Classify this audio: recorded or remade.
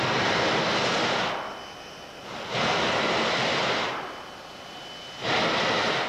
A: recorded